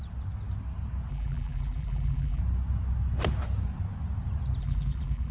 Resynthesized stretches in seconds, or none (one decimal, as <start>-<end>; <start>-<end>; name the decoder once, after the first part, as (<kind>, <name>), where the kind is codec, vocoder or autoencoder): 1.1-2.4 (vocoder, BigVGAN v2); 4.6-5.3